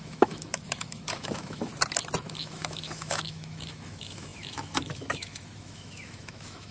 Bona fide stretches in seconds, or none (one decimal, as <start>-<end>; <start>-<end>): 1.7-2.2